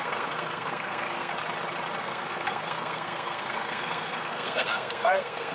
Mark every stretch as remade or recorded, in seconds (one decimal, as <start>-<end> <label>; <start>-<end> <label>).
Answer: 0.0-1.3 remade; 1.3-2.0 recorded; 2.0-5.5 remade